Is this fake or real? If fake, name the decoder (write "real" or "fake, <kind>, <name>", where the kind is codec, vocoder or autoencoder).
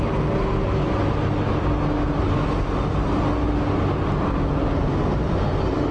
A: real